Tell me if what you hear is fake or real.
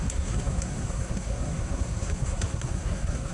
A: fake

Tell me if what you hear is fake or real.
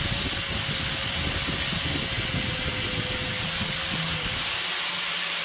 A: real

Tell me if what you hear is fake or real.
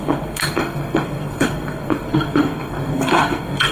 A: fake